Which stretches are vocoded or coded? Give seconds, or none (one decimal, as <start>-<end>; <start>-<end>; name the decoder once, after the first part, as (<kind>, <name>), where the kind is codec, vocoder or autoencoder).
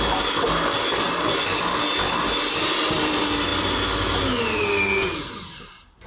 none